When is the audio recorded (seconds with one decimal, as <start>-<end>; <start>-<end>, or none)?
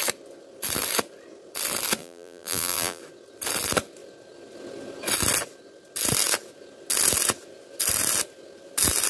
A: 0.0-2.0; 3.0-9.1